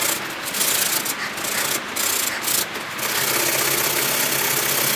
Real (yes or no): yes